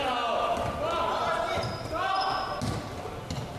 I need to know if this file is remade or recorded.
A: recorded